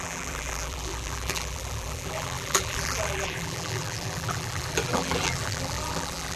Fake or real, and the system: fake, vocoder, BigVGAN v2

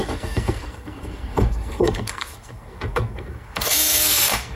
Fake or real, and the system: fake, codec, SNAC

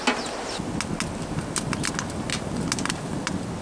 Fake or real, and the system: real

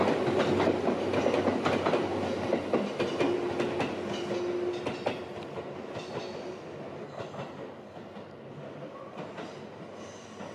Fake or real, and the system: real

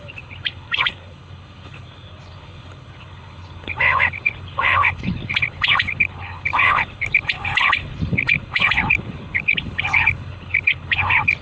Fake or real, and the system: fake, codec, HILCodec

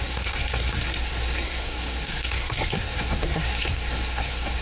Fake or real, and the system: fake, codec, SNAC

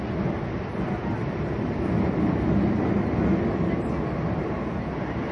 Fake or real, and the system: real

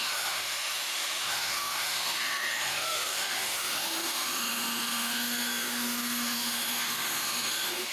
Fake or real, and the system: fake, autoencoder, DAC-VAE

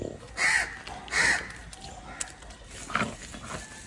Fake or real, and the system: real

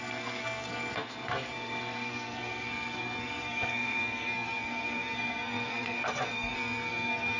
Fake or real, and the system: fake, codec, SNAC